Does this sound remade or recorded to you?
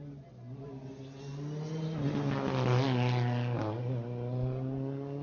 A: recorded